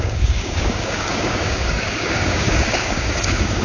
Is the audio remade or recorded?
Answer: remade